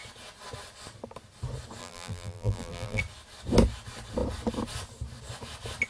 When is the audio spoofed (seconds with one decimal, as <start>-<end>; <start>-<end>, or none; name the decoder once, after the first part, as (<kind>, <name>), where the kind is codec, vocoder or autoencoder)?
1.8-3.0 (vocoder, BigVGAN v2)